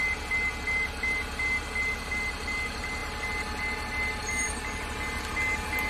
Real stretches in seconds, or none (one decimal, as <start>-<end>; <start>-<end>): 0.0-4.2; 4.9-5.9